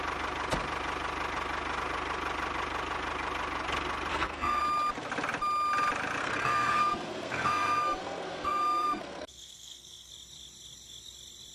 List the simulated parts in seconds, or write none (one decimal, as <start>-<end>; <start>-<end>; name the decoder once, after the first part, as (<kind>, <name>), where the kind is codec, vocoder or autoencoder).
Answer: 4.1-4.6 (codec, SNAC); 6.2-10.1